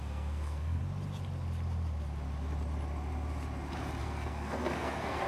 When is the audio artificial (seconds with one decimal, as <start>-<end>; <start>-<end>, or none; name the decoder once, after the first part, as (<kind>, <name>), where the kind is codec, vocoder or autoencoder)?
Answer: 0.0-0.8 (codec, SNAC); 4.0-5.3